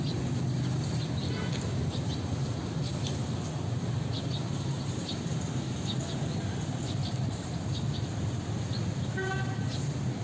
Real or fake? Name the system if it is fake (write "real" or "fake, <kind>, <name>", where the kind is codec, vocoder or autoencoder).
real